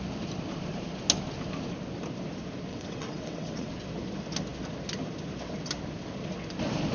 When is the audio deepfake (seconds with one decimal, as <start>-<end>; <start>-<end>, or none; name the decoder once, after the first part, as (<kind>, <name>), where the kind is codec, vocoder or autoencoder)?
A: 2.7-3.7 (vocoder, WaveNeXt)